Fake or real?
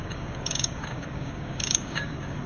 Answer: fake